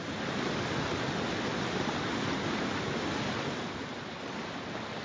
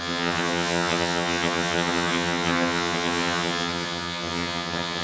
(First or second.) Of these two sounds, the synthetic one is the second